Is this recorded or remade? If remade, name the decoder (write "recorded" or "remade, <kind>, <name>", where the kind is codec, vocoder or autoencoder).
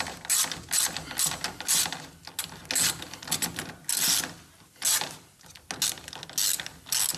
recorded